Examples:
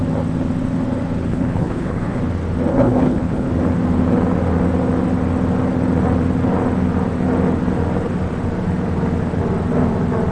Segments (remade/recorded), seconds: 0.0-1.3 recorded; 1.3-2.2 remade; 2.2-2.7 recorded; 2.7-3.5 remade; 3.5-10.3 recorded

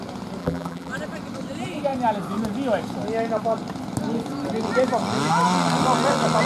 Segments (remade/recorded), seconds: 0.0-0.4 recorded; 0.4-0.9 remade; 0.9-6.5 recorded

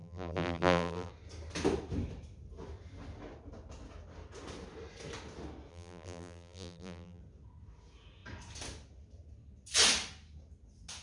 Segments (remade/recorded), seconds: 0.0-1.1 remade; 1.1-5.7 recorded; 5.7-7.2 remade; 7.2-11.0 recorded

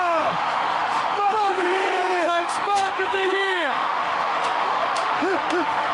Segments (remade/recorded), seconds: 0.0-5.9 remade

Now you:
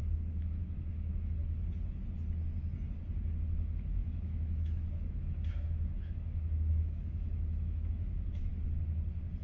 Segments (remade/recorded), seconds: 0.0-1.4 remade; 1.4-3.5 recorded; 3.5-8.5 remade; 8.5-9.4 recorded

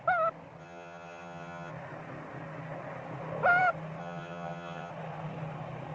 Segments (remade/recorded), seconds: 0.0-0.6 recorded; 0.6-1.7 remade; 1.7-4.0 recorded; 4.0-4.9 remade; 4.9-5.9 recorded

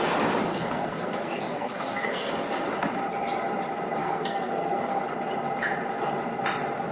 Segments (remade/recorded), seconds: 0.0-0.5 recorded; 0.5-2.3 remade; 2.3-4.0 recorded; 4.0-5.0 remade; 5.0-6.9 recorded

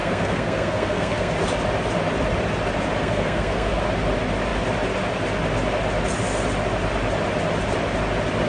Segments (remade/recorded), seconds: 0.0-1.3 remade; 1.3-3.0 recorded; 3.0-3.7 remade; 3.7-8.5 recorded